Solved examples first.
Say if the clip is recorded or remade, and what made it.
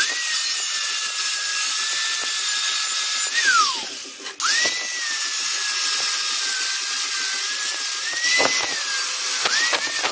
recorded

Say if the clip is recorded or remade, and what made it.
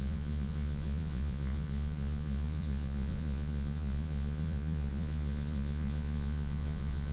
remade, vocoder, Vocos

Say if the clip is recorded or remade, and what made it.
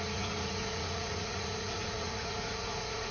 remade, vocoder, Vocos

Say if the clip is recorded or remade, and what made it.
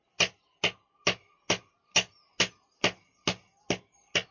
recorded